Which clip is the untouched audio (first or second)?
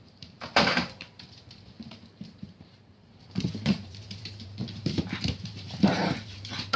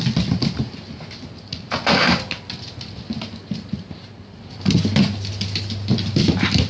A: second